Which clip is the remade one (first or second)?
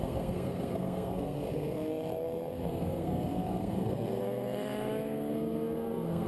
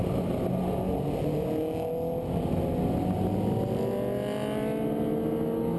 first